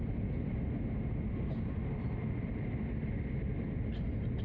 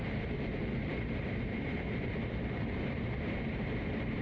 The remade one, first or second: second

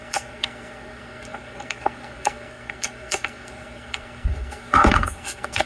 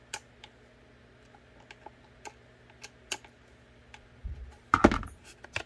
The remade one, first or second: first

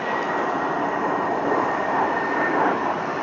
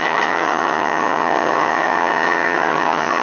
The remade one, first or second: second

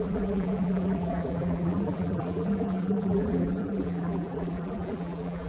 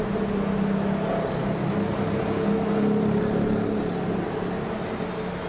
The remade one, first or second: first